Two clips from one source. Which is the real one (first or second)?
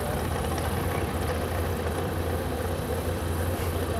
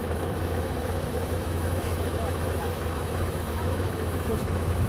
first